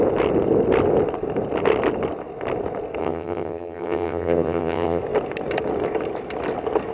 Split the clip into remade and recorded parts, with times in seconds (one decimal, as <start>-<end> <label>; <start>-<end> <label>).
0.0-3.0 recorded; 3.0-5.0 remade; 5.0-6.9 recorded